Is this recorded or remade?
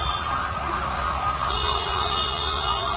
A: remade